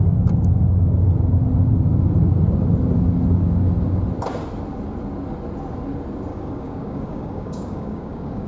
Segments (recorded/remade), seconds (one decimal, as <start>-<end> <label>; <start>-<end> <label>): 0.0-6.3 recorded; 6.3-8.5 remade